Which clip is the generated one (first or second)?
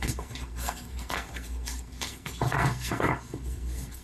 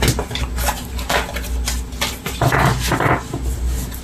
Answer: first